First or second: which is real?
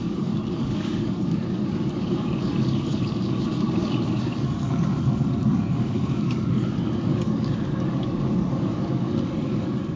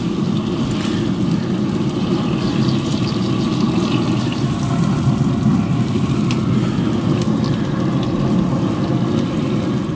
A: second